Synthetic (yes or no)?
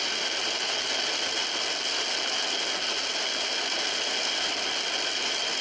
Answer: no